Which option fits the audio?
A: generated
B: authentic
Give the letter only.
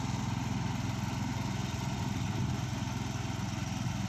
B